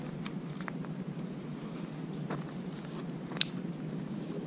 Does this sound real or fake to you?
real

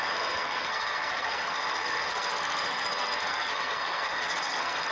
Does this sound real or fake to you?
fake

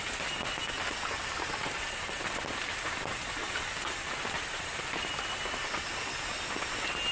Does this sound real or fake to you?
real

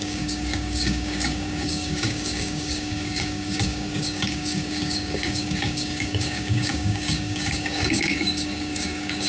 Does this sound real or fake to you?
fake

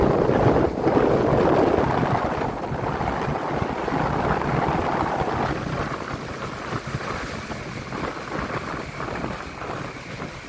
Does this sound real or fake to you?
real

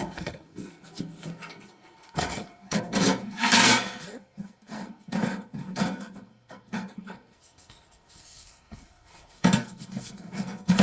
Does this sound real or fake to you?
fake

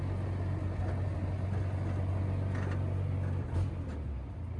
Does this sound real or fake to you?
real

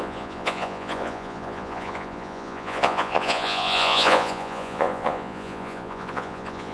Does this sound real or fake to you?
fake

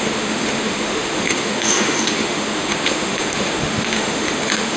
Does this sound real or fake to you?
fake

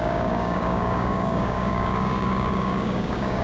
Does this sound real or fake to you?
fake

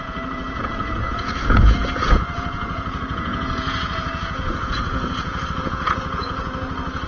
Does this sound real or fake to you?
fake